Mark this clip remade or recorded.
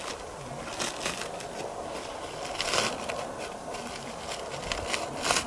recorded